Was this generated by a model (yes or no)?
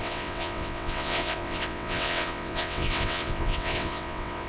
yes